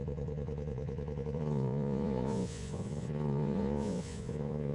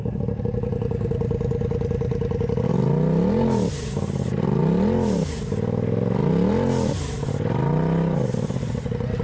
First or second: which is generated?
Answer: first